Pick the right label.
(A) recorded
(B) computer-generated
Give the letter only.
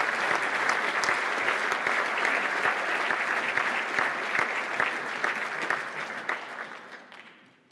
A